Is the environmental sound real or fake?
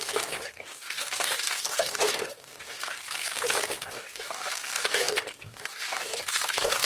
fake